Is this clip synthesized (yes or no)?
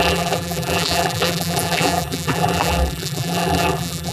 yes